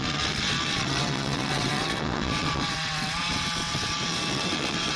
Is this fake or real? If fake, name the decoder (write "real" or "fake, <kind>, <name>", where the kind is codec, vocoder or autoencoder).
fake, vocoder, WaveNeXt